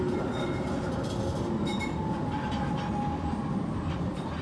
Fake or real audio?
real